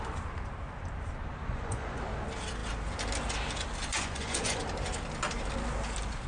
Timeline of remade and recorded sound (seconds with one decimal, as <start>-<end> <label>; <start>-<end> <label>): 0.0-1.5 recorded; 1.5-2.0 remade; 2.0-3.9 recorded; 3.9-4.6 remade; 4.6-6.3 recorded